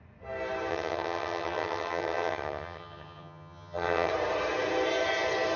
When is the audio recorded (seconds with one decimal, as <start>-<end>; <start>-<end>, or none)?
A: 0.0-0.7; 4.1-5.6